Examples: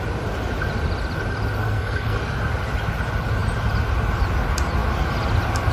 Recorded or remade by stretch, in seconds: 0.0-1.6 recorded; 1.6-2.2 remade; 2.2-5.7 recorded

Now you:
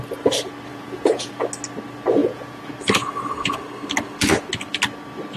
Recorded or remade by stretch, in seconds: 0.0-0.7 recorded; 0.7-1.3 remade; 1.3-2.2 recorded; 2.2-2.7 remade; 2.7-5.4 recorded

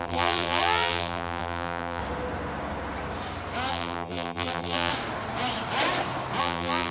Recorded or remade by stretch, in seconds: 0.0-2.0 remade; 2.0-3.7 recorded; 3.7-4.9 remade; 4.9-6.4 recorded; 6.4-6.9 remade

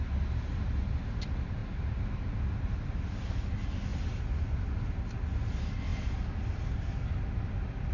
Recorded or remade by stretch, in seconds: 0.0-3.9 recorded; 3.9-4.4 remade; 4.4-7.9 recorded

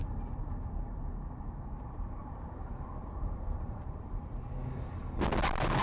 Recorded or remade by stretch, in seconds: 0.0-2.2 recorded; 2.2-4.2 remade; 4.2-5.8 recorded

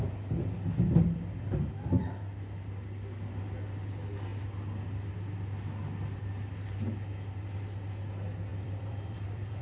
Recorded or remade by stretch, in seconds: 0.0-8.5 recorded; 8.5-9.6 remade